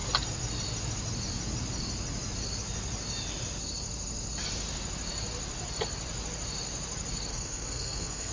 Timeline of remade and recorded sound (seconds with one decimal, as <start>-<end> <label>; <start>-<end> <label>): 0.0-7.3 recorded; 7.3-8.3 remade